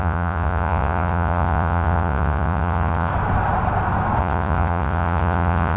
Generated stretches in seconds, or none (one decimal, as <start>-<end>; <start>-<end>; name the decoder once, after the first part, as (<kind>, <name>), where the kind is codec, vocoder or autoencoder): 0.0-3.1 (vocoder, Vocos); 4.2-5.8